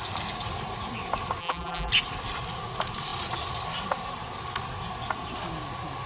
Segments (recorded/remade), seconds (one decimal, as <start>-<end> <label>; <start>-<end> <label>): 0.0-1.4 recorded; 1.4-1.9 remade; 1.9-6.1 recorded